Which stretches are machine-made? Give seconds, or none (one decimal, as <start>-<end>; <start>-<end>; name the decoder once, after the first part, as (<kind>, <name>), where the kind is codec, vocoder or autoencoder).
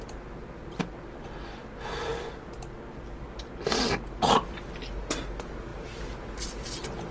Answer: none